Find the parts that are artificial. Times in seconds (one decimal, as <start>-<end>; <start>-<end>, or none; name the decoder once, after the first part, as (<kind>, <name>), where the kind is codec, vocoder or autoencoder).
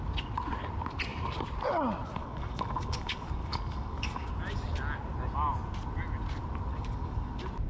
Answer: 2.2-4.3 (codec, DAC); 6.7-7.3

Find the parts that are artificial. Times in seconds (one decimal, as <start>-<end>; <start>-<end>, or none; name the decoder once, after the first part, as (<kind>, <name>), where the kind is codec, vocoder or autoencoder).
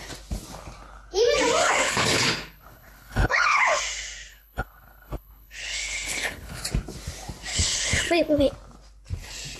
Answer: 1.6-3.8 (codec, HILCodec); 4.3-6.6; 7.5-8.4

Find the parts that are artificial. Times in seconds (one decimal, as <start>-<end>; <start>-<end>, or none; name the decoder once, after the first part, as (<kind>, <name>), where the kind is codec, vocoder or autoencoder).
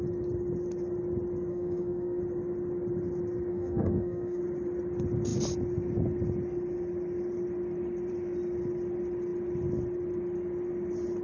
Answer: 1.5-2.2 (autoencoder, DAC-VAE); 3.5-4.4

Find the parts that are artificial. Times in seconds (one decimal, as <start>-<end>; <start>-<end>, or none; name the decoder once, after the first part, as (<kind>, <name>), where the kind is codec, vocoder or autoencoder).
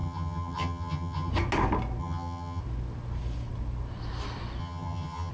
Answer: 0.0-1.3 (vocoder, HiFi-GAN); 2.0-2.6; 4.6-5.3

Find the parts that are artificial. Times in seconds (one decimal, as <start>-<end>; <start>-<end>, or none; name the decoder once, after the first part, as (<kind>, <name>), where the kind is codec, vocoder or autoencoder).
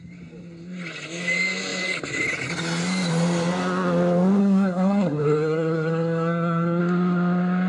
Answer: 4.4-6.8 (codec, SNAC)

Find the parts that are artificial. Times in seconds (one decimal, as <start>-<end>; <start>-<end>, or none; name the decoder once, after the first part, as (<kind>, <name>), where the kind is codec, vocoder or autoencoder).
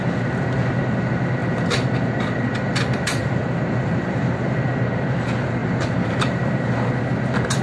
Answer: 1.4-4.7 (vocoder, BigVGAN v2); 5.6-6.4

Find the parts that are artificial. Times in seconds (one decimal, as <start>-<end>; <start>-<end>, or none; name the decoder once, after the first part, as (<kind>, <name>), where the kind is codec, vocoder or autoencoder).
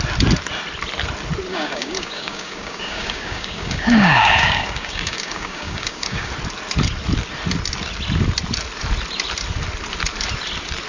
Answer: 1.5-6.3 (codec, DAC)